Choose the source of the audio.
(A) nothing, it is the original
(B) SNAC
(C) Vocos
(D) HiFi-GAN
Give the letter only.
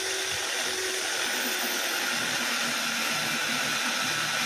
A